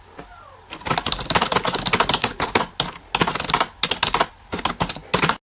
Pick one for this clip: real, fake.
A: real